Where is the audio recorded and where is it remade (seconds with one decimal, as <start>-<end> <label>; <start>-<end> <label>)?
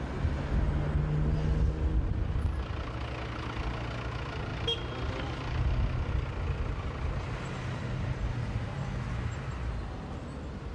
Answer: 0.0-10.7 recorded